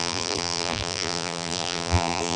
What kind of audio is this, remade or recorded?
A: remade